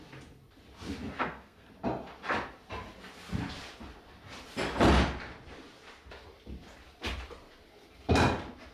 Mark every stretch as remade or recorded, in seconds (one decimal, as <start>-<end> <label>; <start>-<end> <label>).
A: 0.0-1.2 recorded; 1.2-1.7 remade; 1.7-8.7 recorded